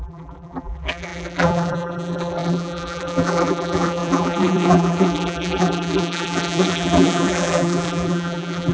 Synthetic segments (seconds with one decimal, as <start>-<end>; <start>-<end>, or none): 0.0-8.7